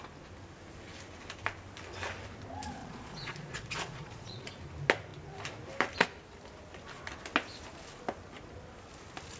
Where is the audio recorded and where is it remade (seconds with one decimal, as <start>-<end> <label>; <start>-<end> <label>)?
0.0-2.8 recorded; 2.8-4.5 remade; 4.5-9.4 recorded